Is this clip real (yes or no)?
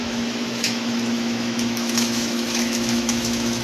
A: no